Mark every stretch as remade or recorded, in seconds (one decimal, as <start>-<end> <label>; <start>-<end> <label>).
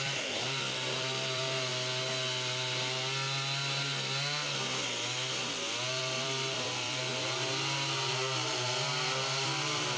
0.0-1.7 remade; 1.7-6.0 recorded; 6.0-7.1 remade; 7.1-8.1 recorded; 8.1-10.0 remade